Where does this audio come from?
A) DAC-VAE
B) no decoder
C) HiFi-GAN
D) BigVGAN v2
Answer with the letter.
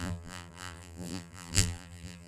D